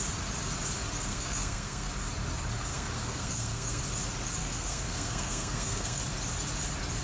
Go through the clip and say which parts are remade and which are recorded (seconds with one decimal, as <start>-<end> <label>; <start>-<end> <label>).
0.0-1.1 recorded; 1.1-1.9 remade; 1.9-2.7 recorded; 2.7-3.8 remade; 3.8-4.4 recorded; 4.4-6.0 remade; 6.0-7.0 recorded